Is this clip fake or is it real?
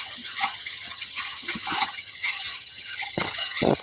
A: fake